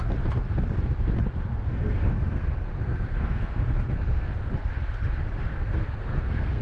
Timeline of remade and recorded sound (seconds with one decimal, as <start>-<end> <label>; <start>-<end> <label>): 0.0-1.5 recorded; 1.5-4.3 remade; 4.3-5.5 recorded; 5.5-6.6 remade